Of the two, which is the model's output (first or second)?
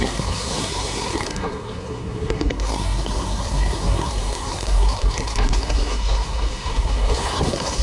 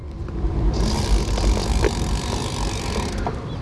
first